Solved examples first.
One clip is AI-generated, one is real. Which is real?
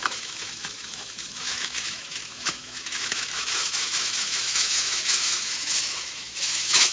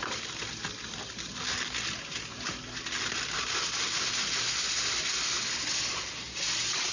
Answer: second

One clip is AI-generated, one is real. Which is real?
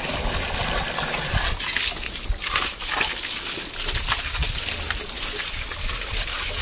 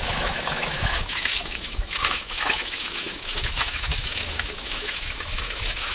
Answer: first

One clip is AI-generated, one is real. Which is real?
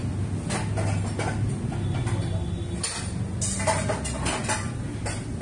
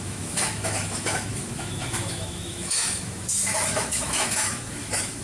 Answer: first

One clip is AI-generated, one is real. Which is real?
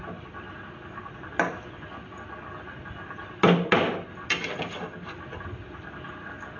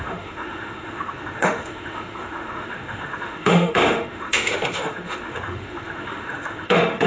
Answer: first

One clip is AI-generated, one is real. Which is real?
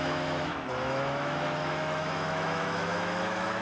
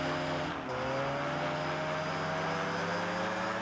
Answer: second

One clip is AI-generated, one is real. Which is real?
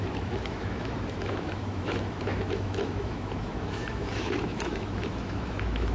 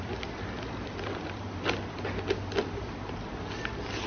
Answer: second